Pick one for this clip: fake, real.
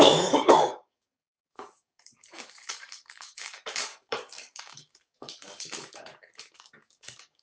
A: fake